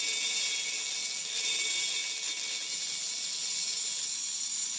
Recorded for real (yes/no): yes